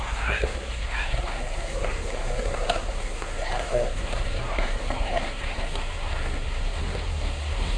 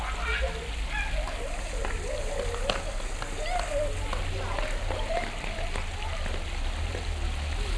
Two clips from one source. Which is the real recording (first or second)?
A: second